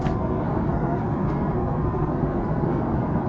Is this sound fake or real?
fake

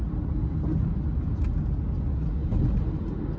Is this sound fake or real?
real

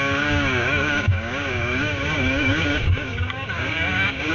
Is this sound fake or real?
fake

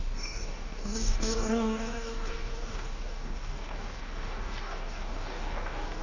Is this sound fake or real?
fake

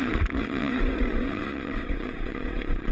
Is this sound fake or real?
fake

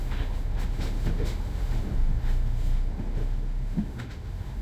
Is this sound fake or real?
fake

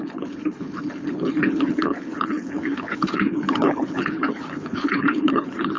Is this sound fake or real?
fake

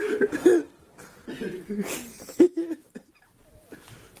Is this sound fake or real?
real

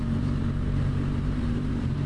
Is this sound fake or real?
fake